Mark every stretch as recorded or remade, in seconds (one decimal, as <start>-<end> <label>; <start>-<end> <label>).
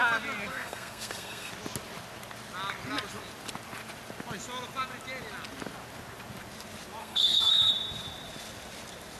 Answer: 0.0-0.5 recorded; 0.5-1.5 remade; 1.5-7.0 recorded; 7.0-7.7 remade; 7.7-9.2 recorded